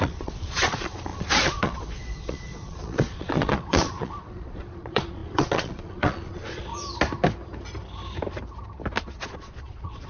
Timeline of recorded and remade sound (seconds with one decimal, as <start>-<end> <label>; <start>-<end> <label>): 0.0-6.7 remade; 6.7-9.2 recorded; 9.2-10.1 remade